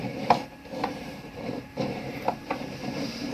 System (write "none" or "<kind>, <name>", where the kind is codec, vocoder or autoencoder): vocoder, BigVGAN v2